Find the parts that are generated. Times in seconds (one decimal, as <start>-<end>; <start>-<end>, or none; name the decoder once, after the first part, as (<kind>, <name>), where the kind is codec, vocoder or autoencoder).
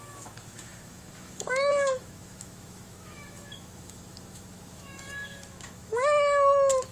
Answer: 0.0-6.9 (autoencoder, DAC-VAE)